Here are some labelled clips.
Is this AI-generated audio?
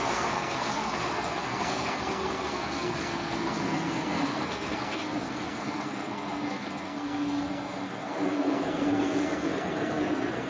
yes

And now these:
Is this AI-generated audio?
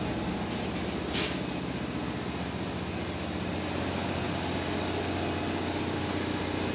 no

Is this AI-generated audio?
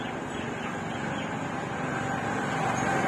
no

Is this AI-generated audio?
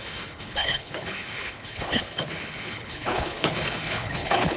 yes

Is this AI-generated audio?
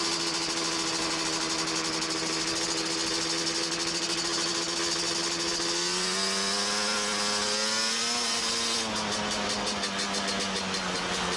no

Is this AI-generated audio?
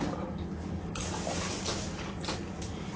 no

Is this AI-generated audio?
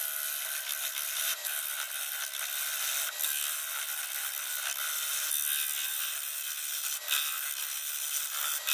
no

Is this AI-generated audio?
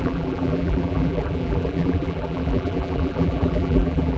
yes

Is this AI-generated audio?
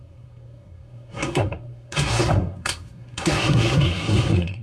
yes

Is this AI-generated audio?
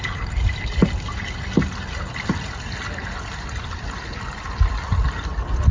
no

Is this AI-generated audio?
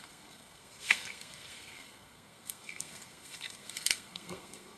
yes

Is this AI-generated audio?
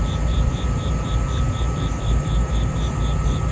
yes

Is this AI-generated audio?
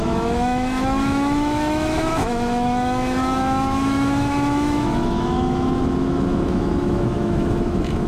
yes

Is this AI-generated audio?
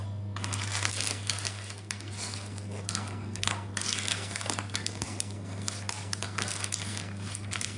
yes